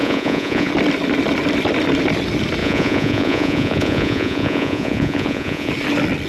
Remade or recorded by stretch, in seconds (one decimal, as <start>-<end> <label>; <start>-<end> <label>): 0.0-0.7 remade; 0.7-2.6 recorded; 2.6-5.7 remade; 5.7-6.3 recorded